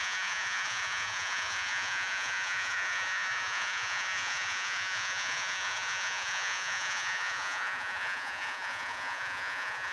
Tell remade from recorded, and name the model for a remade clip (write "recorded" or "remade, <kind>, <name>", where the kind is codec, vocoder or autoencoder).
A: remade, vocoder, Vocos